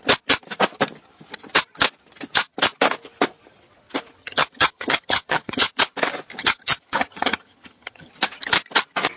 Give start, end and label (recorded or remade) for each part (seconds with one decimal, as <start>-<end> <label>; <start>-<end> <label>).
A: 0.0-4.2 recorded; 4.2-5.8 remade; 5.8-6.4 recorded; 6.4-8.1 remade; 8.1-9.2 recorded